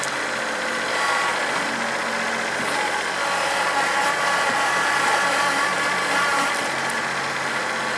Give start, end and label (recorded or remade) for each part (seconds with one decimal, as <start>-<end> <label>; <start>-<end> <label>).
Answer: 0.0-8.0 recorded